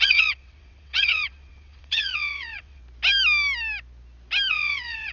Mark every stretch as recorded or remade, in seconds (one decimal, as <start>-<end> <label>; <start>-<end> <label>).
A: 0.0-2.8 remade; 2.8-4.5 recorded; 4.5-5.1 remade